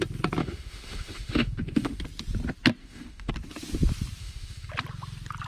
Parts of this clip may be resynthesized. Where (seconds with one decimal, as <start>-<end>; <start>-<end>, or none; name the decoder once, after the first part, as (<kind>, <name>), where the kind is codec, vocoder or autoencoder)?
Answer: 0.4-2.0 (autoencoder, DAC-VAE); 2.8-3.3; 4.2-4.7